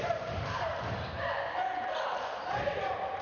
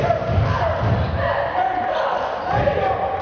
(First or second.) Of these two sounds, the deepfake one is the first